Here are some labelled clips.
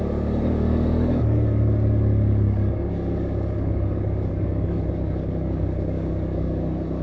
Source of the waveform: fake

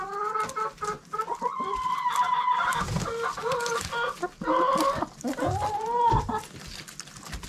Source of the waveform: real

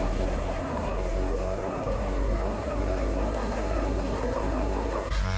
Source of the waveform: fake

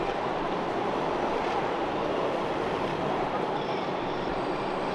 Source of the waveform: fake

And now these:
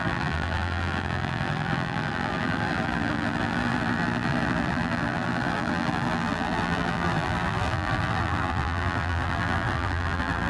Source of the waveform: fake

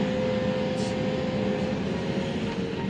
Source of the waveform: real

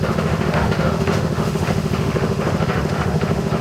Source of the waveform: fake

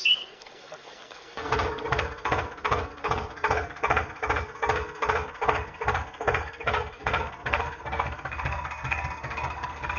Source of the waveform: fake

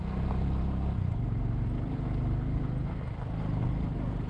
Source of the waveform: real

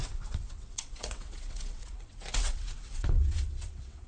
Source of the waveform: fake